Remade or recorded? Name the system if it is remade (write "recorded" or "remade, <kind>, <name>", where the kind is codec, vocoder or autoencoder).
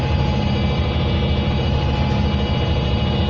recorded